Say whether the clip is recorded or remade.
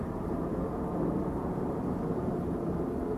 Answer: remade